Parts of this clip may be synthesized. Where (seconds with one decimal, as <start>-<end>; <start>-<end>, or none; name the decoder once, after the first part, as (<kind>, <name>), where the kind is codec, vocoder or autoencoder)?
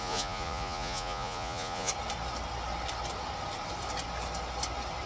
0.0-1.9 (vocoder, Vocos)